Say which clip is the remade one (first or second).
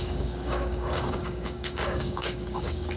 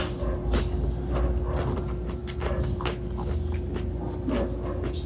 first